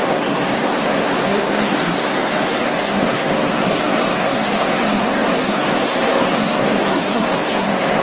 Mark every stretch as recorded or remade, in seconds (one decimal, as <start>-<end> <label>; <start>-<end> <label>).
0.0-8.0 remade